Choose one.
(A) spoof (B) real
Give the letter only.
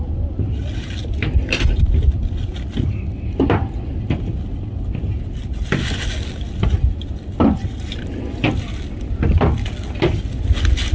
B